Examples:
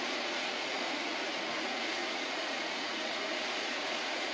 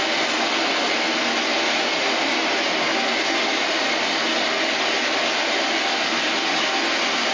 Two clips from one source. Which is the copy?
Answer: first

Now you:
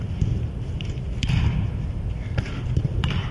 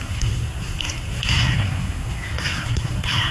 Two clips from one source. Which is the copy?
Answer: second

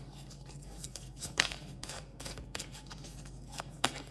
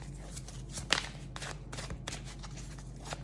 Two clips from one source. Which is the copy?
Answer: first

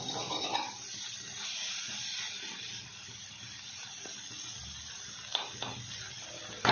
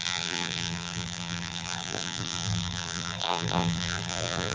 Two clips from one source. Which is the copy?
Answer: second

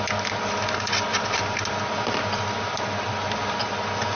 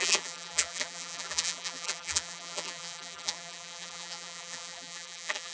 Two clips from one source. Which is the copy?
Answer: second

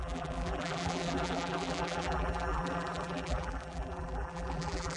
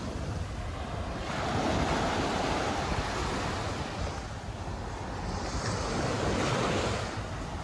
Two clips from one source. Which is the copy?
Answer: first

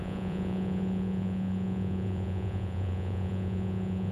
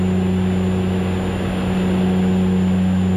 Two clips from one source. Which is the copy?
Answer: first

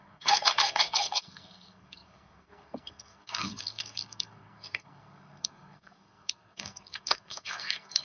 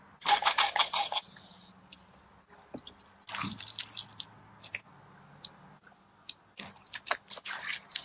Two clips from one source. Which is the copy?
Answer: first